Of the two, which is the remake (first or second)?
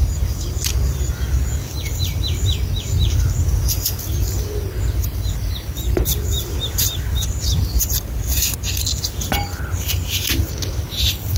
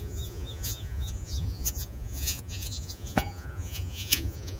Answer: second